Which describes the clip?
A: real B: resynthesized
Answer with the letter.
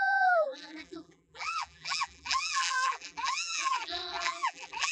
B